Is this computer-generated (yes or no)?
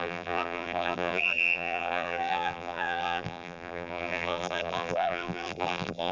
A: yes